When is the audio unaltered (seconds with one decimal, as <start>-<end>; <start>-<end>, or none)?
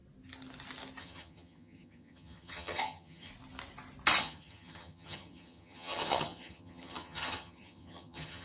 0.0-1.0; 3.3-4.2